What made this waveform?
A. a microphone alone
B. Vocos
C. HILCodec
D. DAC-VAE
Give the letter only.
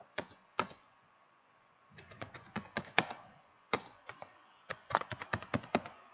B